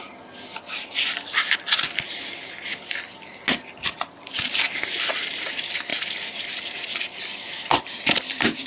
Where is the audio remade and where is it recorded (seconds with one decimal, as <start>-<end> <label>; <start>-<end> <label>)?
0.0-8.7 recorded